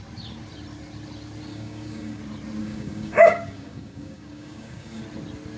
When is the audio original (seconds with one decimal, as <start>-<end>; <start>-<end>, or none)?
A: 0.0-1.5; 2.2-2.6; 5.0-5.6